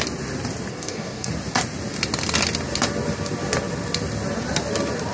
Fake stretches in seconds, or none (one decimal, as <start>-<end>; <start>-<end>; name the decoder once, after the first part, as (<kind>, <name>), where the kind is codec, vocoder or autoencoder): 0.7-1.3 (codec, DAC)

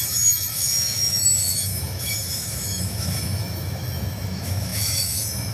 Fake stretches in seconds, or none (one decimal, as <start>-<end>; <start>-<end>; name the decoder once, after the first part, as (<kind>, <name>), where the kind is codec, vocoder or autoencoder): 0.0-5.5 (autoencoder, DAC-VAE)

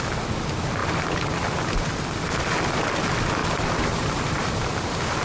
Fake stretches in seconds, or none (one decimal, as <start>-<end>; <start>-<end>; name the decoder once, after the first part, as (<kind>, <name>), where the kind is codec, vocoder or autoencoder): 3.4-4.5 (vocoder, BigVGAN v2)